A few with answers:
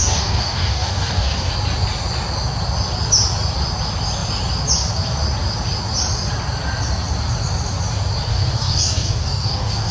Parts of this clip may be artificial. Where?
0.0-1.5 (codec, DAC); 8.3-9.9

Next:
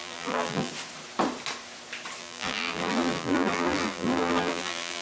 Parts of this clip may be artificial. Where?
0.0-0.7 (vocoder, BigVGAN v2); 2.2-5.0

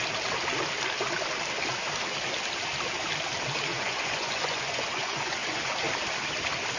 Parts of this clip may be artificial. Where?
3.7-5.7 (vocoder, Vocos)

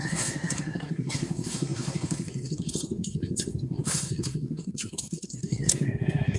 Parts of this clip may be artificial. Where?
0.0-6.4 (codec, SNAC)

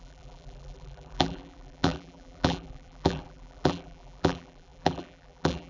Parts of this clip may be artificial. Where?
0.0-5.7 (vocoder, BigVGAN v2)

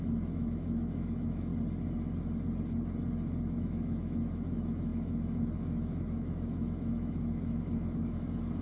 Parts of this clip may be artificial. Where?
0.0-1.5 (autoencoder, DAC-VAE); 3.4-8.6

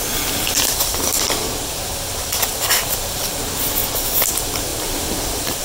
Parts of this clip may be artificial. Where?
0.0-1.4 (vocoder, BigVGAN v2); 2.4-3.8; 4.3-5.6

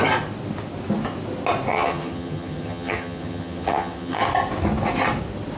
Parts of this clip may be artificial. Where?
1.7-4.2 (vocoder, HiFi-GAN)